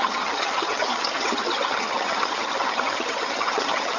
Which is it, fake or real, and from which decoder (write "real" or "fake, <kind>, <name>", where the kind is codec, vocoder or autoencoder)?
fake, vocoder, HiFi-GAN